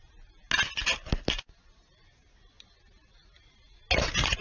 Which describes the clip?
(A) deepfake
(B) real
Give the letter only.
B